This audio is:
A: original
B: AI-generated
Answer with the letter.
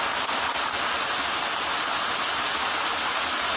A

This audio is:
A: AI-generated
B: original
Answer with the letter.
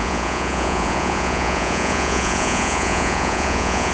A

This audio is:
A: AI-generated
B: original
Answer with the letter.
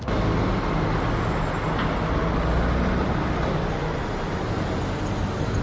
B